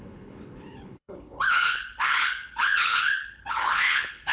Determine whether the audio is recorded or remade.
remade